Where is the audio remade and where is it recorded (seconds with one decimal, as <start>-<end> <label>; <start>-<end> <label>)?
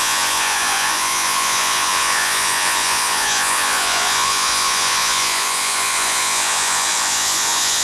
0.0-7.8 remade